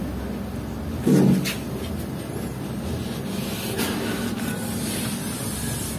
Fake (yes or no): no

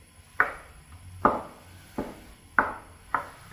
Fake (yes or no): no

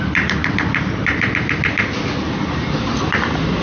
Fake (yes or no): no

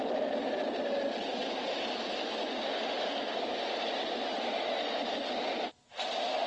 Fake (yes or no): no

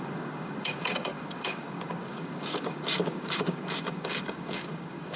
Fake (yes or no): yes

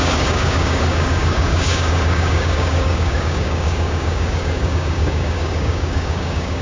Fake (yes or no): yes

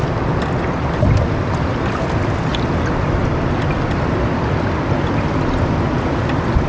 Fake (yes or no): no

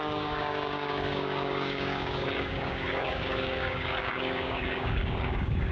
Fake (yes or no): yes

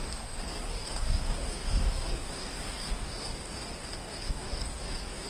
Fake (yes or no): yes